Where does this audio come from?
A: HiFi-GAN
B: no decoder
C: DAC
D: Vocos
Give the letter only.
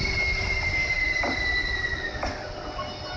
B